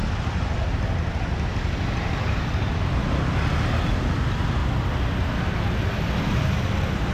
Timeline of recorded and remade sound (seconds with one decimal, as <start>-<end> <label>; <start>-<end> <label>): 0.0-7.1 recorded